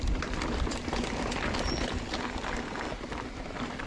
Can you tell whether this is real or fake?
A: real